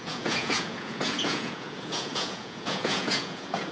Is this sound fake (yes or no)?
yes